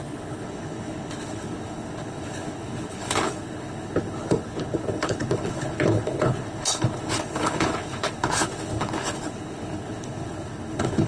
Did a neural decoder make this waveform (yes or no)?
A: yes